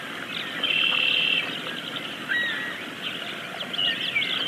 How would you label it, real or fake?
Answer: real